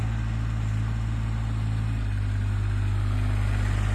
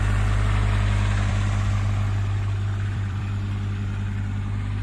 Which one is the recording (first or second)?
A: first